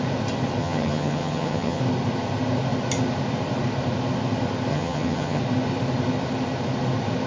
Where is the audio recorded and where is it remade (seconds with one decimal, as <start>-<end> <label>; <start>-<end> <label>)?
0.0-0.6 recorded; 0.6-1.8 remade; 1.8-4.7 recorded; 4.7-5.4 remade; 5.4-7.3 recorded